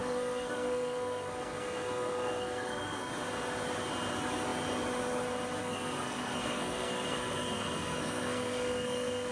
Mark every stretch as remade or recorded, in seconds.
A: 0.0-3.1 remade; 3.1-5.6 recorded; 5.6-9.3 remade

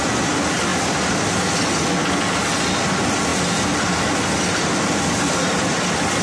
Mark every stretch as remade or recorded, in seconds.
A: 0.0-6.2 recorded